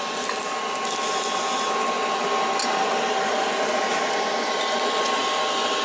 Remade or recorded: recorded